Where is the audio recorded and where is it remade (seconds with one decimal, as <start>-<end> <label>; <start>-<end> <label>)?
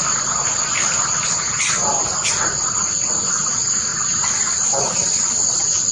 0.0-5.9 recorded